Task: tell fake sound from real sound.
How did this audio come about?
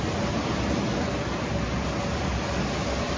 real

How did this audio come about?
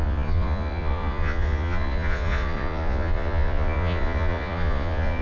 fake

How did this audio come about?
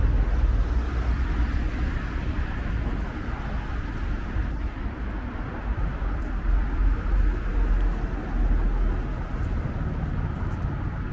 real